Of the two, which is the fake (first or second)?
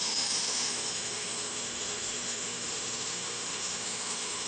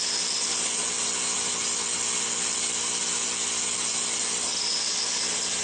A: first